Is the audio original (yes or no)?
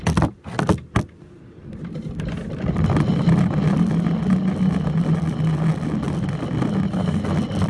yes